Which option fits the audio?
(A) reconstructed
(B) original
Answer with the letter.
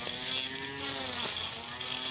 B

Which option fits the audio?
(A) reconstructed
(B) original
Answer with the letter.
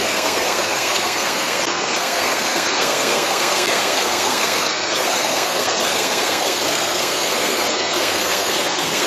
A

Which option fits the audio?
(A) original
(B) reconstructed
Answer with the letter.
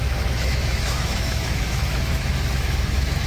B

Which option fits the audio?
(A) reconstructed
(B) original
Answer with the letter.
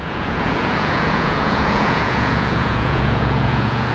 A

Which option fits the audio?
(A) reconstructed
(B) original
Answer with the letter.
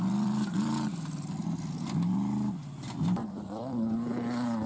A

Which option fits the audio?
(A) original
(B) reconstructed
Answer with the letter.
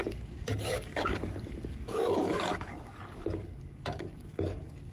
B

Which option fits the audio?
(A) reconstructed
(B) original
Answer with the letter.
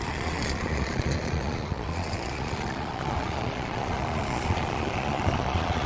A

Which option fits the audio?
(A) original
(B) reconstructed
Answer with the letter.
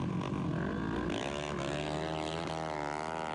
A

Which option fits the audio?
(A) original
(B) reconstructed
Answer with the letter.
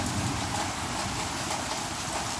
A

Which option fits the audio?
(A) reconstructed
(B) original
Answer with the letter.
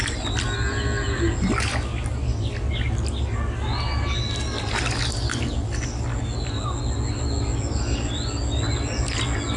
B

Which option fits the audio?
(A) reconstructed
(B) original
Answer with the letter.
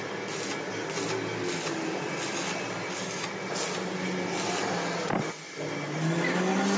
B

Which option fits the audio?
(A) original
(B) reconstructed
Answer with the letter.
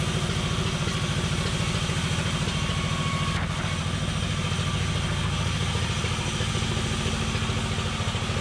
A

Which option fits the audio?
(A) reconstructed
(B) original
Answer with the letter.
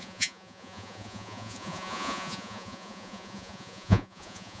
A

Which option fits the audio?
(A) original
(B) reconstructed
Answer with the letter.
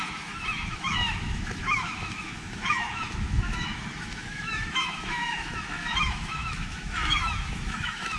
B